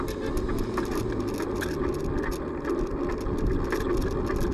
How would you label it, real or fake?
real